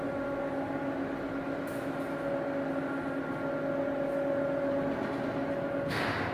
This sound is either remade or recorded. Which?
recorded